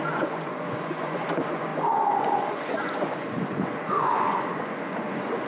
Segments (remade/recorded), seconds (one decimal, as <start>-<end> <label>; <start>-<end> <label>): 0.0-5.5 remade